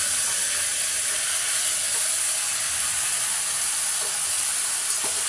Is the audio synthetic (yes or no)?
no